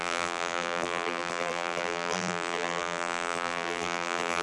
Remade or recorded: remade